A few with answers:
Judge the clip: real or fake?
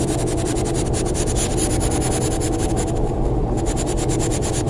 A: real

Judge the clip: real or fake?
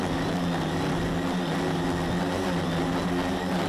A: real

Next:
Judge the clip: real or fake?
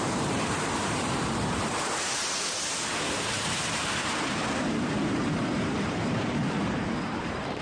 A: fake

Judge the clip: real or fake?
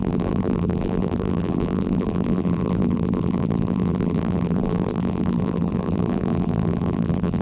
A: fake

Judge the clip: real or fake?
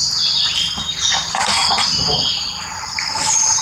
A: real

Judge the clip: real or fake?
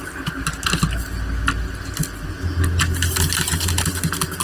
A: real